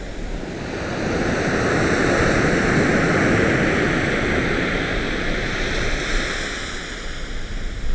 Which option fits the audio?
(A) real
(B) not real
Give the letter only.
A